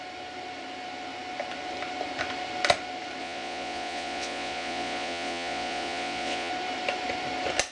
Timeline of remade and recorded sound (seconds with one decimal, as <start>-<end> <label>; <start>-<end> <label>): 0.0-3.2 recorded; 3.2-6.5 remade; 6.5-7.7 recorded